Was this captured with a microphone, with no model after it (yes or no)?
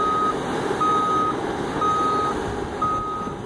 yes